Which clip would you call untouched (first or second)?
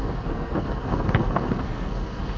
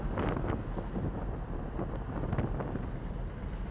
second